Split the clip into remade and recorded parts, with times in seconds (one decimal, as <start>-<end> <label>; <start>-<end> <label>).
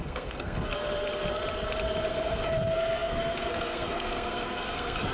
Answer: 0.0-0.7 remade; 0.7-2.1 recorded; 2.1-5.1 remade